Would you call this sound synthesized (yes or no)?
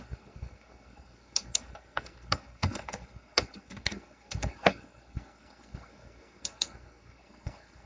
yes